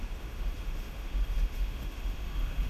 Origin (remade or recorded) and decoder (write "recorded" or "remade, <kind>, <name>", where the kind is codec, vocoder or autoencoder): remade, autoencoder, DAC-VAE